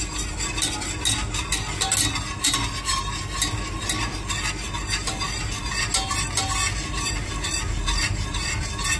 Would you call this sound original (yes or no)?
yes